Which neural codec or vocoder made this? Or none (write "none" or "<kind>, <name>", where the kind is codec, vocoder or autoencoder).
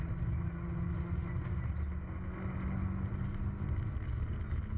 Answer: none